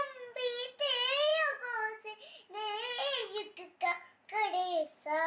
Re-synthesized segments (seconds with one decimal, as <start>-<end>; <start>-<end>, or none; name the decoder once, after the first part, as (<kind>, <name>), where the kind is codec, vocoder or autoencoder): none